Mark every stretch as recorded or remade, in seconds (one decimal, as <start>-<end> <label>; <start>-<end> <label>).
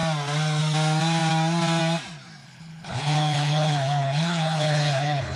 0.0-2.4 recorded; 2.4-5.4 remade